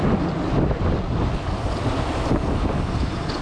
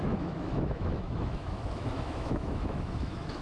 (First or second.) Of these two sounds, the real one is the first